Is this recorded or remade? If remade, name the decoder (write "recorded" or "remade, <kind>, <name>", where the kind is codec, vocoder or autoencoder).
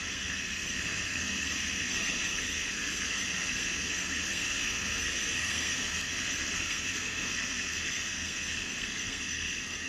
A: remade, codec, SNAC